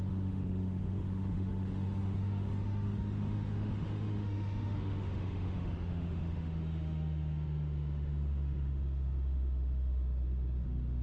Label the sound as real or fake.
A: fake